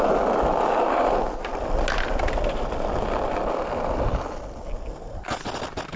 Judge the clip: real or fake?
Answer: real